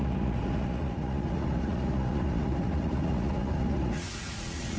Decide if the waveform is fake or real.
fake